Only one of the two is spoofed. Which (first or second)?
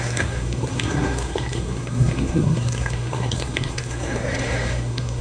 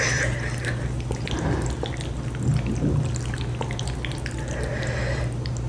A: first